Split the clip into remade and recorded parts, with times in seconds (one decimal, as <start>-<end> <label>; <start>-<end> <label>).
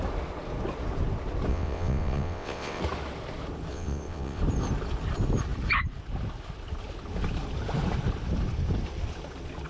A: 0.0-1.5 recorded; 1.5-2.8 remade; 2.8-3.7 recorded; 3.7-4.4 remade; 4.4-9.7 recorded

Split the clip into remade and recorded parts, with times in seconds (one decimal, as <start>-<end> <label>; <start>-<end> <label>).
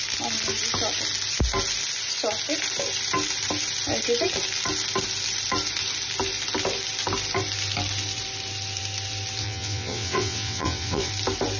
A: 0.0-9.4 recorded; 9.4-11.1 remade; 11.1-11.6 recorded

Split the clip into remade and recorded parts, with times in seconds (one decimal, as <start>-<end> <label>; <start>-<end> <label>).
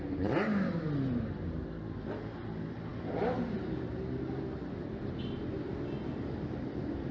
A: 0.0-7.1 recorded